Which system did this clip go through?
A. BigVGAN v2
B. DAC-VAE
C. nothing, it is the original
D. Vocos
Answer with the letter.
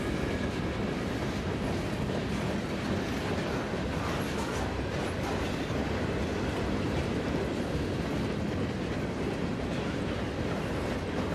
C